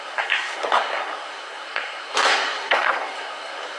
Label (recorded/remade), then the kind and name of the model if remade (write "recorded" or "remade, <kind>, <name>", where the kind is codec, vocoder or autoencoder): remade, codec, SNAC